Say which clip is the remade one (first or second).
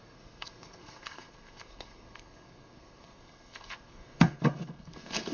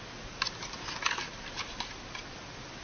first